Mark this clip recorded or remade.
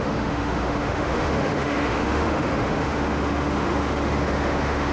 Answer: remade